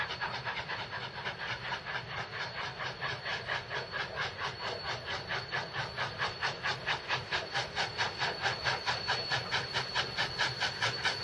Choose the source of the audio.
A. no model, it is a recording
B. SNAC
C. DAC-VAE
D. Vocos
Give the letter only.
A